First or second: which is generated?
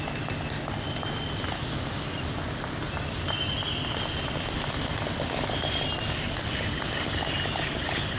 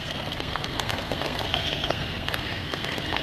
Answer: second